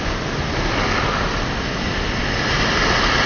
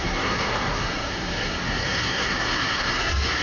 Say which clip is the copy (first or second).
second